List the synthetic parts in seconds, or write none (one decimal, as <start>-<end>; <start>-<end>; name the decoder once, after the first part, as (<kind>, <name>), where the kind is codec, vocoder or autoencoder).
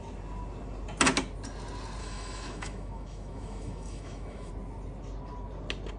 2.0-4.5 (autoencoder, DAC-VAE)